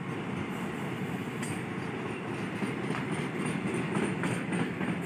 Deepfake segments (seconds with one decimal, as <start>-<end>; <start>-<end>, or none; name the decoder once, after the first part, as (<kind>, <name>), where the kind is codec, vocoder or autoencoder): none